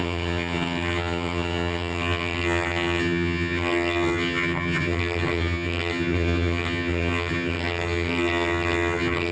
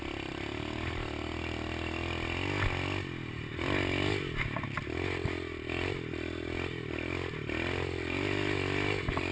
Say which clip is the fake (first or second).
first